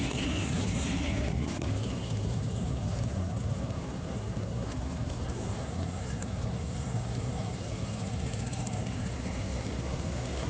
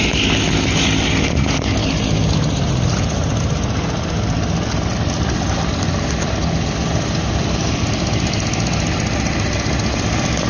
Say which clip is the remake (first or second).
first